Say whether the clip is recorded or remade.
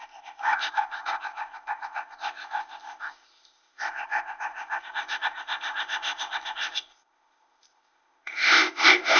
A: remade